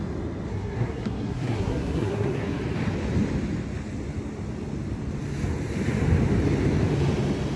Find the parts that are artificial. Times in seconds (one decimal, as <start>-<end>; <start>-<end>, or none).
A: 0.5-2.6